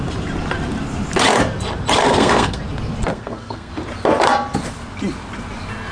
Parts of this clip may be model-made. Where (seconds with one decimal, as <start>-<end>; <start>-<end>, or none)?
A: 2.0-2.6; 3.1-3.7